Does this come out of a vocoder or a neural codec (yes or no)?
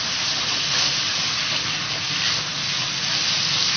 no